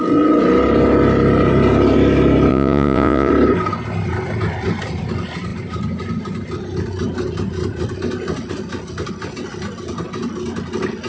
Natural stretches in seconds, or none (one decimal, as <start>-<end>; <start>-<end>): 0.0-2.5; 3.3-11.1